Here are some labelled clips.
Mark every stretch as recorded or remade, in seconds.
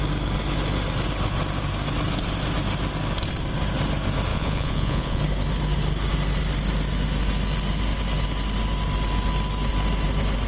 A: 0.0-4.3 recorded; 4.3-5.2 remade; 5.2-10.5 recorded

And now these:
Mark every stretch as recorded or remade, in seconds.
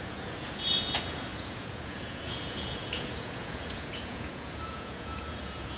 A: 0.0-5.8 remade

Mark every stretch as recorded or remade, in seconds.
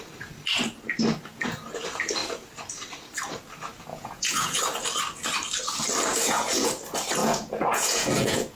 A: 0.0-3.9 recorded; 3.9-4.6 remade; 4.6-6.1 recorded; 6.1-6.7 remade; 6.7-7.2 recorded; 7.2-8.6 remade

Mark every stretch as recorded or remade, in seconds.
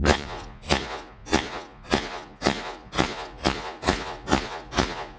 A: 0.0-5.2 remade